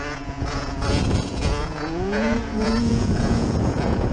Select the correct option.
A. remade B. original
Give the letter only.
A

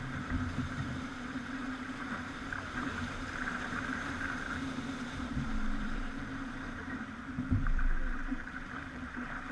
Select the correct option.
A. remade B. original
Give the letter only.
A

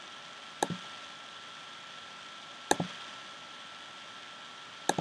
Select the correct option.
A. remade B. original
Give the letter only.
B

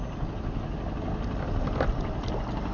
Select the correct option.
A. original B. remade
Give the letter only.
A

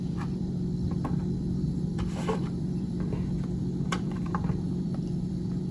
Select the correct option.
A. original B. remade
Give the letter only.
B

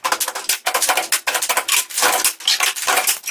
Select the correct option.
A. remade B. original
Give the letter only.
B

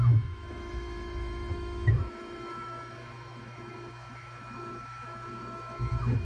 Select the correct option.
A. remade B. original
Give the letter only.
A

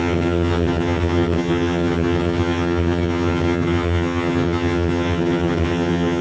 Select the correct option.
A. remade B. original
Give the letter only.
A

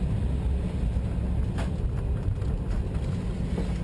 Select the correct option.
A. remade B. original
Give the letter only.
B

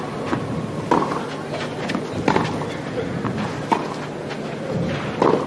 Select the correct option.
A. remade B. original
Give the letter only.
B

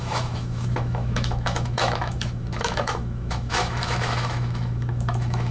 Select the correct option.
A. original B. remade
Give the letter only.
B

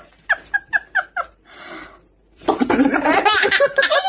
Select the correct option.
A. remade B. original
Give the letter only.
A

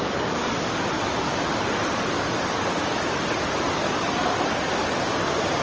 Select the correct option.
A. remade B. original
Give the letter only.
B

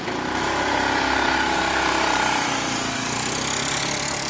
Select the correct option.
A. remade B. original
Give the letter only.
A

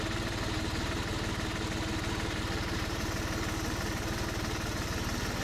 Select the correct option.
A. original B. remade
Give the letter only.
A